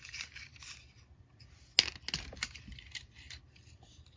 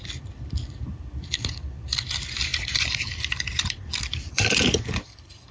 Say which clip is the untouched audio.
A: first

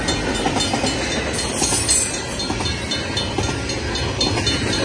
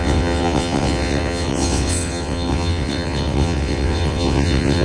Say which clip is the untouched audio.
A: first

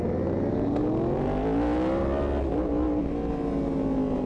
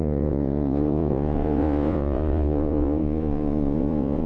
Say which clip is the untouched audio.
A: first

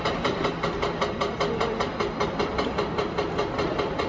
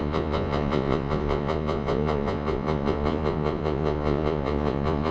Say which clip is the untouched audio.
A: first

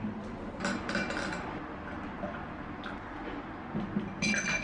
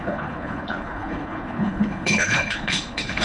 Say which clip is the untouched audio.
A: first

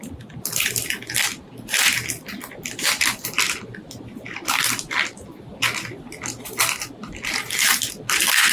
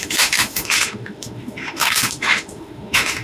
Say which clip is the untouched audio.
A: first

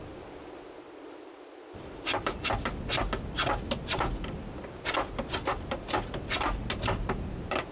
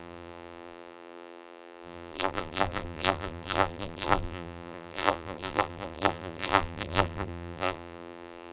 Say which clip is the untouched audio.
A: first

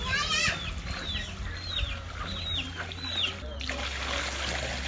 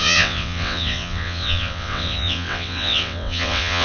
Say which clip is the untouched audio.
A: first